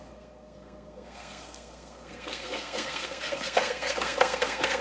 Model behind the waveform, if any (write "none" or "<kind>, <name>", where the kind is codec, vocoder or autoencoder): codec, SNAC